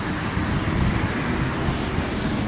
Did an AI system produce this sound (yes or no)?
no